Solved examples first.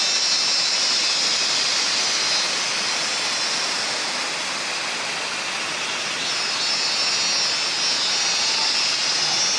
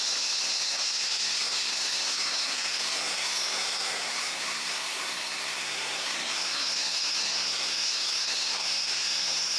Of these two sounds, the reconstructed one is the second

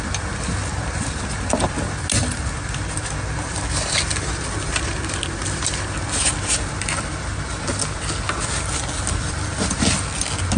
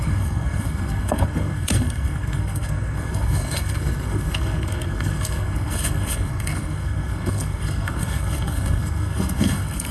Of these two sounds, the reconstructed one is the second